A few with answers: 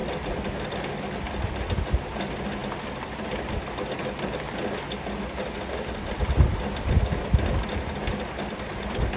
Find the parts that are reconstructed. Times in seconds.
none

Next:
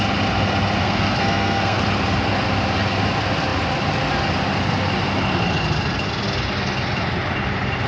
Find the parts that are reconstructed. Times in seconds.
0.8-1.8 (codec, SNAC)

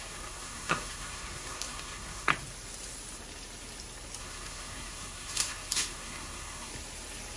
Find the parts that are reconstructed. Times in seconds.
0.0-2.3 (codec, SNAC); 4.2-6.7

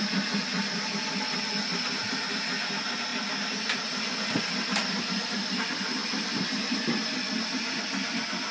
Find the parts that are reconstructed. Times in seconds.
none